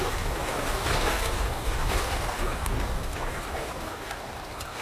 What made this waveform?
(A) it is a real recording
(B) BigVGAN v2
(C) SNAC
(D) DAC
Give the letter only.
D